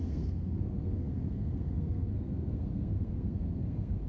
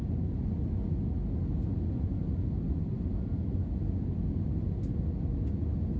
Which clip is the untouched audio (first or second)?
second